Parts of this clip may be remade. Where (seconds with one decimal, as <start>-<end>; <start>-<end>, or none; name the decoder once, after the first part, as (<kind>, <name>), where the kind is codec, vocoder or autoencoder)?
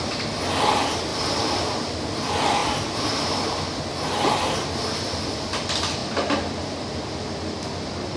1.1-1.6 (vocoder, BigVGAN v2); 2.6-3.9; 6.0-6.7